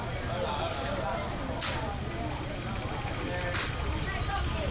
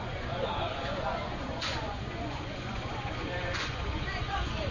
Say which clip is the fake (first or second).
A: second